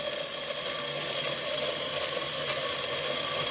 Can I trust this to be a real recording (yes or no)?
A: yes